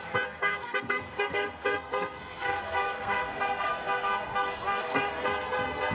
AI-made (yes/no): yes